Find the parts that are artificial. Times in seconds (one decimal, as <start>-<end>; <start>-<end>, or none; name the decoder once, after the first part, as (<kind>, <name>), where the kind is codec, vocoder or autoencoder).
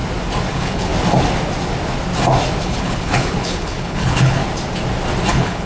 0.5-0.9 (codec, HILCodec); 2.6-4.4; 5.3-5.7